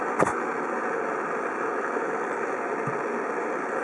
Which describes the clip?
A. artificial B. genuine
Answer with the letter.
B